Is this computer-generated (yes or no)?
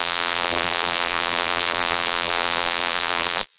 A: yes